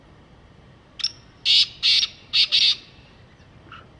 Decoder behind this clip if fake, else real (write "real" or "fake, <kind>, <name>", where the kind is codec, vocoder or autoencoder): real